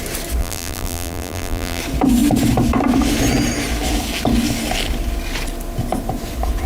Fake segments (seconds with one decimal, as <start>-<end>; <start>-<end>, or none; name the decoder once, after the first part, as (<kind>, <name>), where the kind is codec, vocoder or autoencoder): 0.4-1.8 (vocoder, BigVGAN v2)